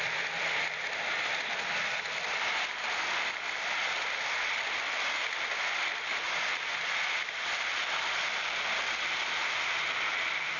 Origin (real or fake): real